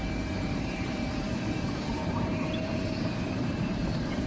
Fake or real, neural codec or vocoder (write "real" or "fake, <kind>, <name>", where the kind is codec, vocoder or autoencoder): fake, vocoder, BigVGAN v2